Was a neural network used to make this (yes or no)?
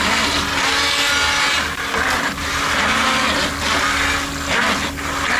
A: no